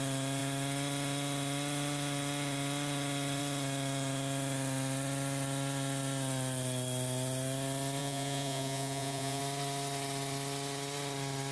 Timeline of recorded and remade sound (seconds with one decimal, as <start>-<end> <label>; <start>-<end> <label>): 0.0-8.0 recorded; 8.0-9.4 remade; 9.4-11.5 recorded